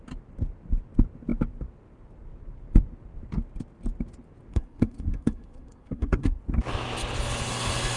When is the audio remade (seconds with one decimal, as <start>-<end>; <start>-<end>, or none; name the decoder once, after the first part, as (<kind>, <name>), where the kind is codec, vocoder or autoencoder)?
4.5-6.4 (codec, SNAC)